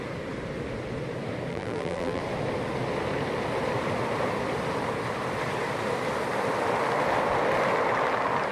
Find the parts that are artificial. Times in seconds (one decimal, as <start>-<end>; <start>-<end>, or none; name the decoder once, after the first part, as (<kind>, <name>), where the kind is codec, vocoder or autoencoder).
1.5-2.2 (vocoder, BigVGAN v2)